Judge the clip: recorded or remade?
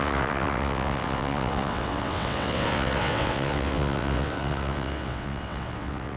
remade